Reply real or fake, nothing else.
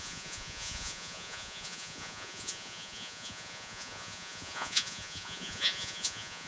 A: fake